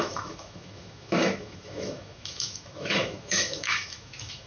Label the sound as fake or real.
fake